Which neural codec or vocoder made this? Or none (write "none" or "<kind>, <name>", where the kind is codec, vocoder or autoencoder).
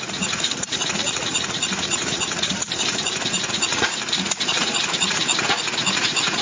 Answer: vocoder, Vocos